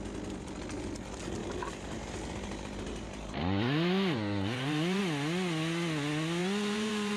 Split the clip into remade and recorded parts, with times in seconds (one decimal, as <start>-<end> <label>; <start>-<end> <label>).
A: 0.0-1.4 recorded; 1.4-5.0 remade; 5.0-6.4 recorded; 6.4-7.2 remade